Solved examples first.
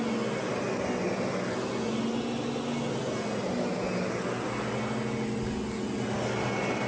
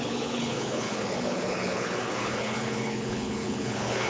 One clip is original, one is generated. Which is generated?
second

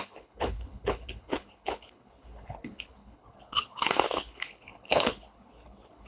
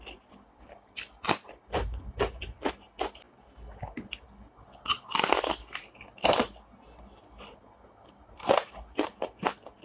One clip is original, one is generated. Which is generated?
first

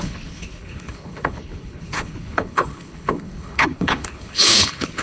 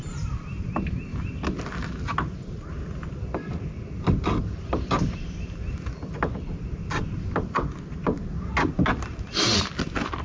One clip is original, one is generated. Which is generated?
first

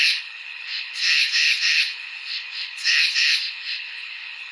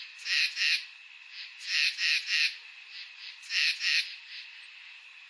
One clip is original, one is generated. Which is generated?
first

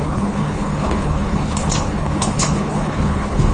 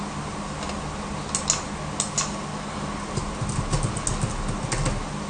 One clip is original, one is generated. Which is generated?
first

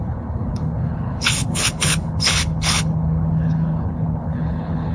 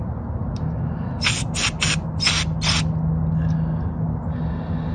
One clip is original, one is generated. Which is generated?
first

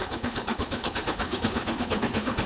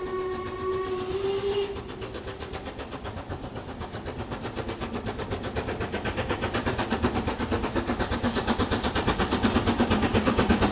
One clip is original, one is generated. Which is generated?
first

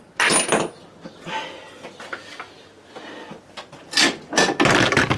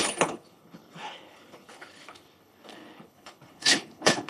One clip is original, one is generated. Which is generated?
second